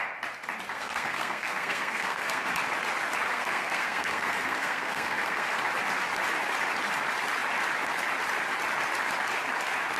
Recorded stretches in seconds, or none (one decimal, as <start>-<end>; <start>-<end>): 0.0-0.7; 2.5-3.3; 5.6-10.0